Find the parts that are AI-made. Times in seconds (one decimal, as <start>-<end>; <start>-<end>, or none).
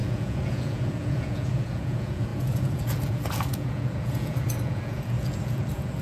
0.0-6.0